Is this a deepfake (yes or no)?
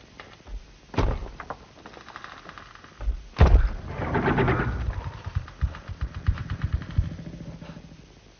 no